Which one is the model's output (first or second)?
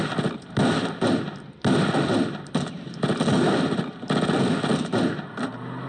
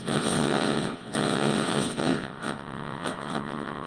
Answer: second